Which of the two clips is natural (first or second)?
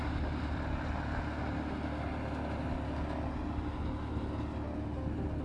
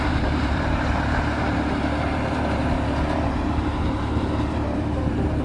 first